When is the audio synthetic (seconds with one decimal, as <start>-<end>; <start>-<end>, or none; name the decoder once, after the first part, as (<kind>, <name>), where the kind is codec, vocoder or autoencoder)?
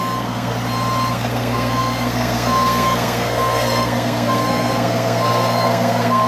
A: 0.0-0.5 (codec, SNAC); 1.1-6.3